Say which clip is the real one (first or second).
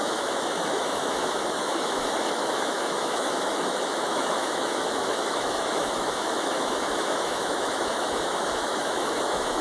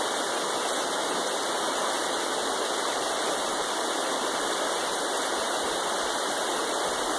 second